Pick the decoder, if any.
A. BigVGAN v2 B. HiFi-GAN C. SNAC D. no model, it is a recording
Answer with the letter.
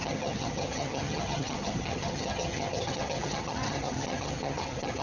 B